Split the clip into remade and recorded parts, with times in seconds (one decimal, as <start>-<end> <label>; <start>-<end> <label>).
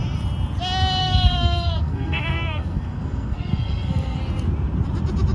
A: 0.0-1.0 recorded; 1.0-4.2 remade; 4.2-5.3 recorded